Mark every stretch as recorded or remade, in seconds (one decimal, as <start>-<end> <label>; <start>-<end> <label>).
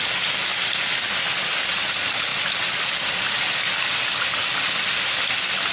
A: 0.0-0.5 recorded; 0.5-1.2 remade; 1.2-2.3 recorded; 2.3-3.6 remade; 3.6-5.7 recorded